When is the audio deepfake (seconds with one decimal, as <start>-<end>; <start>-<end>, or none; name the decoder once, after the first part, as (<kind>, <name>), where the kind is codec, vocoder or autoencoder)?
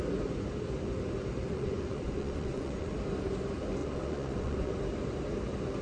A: 1.5-2.9 (vocoder, Vocos); 3.8-4.7